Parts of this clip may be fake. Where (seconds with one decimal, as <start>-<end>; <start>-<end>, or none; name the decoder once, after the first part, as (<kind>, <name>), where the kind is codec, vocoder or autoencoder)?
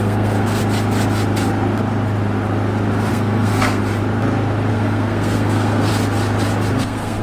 0.0-0.6 (codec, SNAC); 3.1-3.8; 4.7-5.9; 6.7-7.2